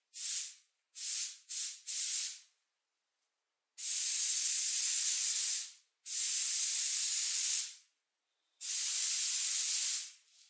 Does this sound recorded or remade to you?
recorded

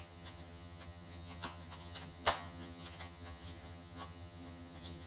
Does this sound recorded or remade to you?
remade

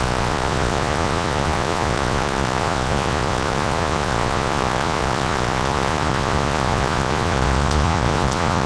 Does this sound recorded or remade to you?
remade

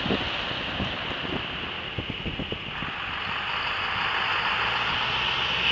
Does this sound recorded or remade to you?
recorded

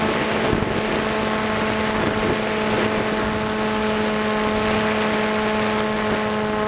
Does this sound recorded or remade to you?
recorded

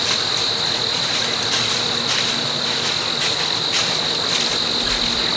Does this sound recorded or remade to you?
recorded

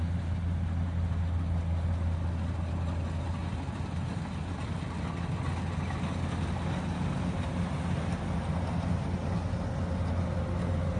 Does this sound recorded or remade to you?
recorded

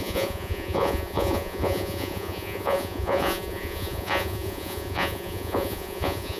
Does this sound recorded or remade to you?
remade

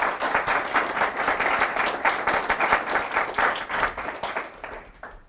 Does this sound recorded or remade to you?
recorded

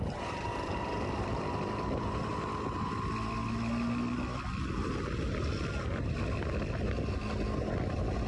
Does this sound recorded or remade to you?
recorded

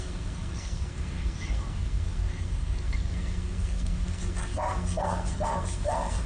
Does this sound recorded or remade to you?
remade